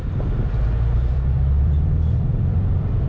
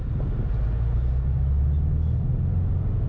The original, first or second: second